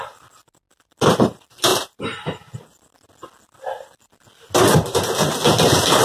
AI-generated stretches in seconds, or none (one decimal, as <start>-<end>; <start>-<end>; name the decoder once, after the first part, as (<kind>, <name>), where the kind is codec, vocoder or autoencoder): 1.7-2.5 (vocoder, BigVGAN v2)